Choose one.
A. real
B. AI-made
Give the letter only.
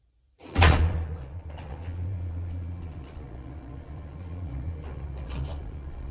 B